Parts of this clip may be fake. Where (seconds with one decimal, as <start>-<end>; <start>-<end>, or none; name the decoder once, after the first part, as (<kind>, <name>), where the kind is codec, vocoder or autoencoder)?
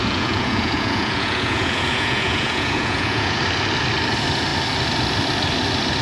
0.0-3.4 (vocoder, Vocos)